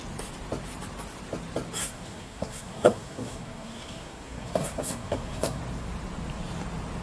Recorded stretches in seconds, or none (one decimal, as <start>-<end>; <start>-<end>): 0.0-1.8; 5.6-7.0